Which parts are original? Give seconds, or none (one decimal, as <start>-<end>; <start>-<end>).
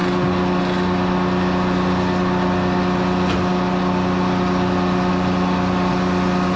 0.0-6.6